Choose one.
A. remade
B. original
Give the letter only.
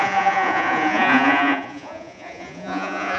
A